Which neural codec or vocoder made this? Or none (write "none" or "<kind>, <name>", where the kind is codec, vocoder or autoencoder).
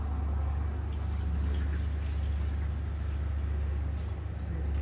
none